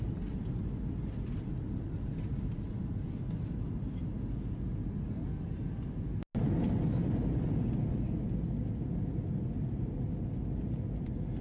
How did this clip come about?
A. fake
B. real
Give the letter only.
B